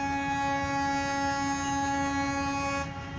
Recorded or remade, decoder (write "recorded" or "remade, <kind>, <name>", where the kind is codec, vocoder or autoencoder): recorded